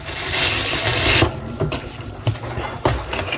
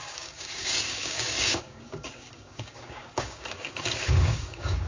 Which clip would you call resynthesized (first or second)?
second